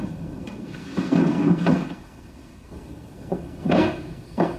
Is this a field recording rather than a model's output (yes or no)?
no